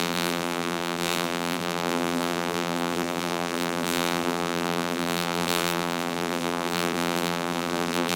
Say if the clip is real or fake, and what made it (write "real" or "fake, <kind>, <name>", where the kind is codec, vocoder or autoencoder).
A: fake, vocoder, BigVGAN v2